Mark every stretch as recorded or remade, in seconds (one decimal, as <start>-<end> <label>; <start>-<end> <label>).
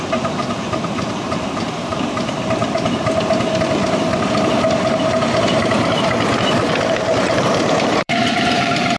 0.0-1.9 remade; 1.9-7.0 recorded; 7.0-9.0 remade